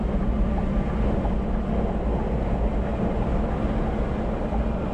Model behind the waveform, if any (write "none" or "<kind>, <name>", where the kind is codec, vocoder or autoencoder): none